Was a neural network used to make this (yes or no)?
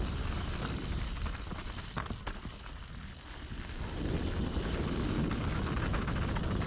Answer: no